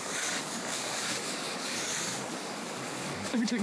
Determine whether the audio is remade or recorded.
remade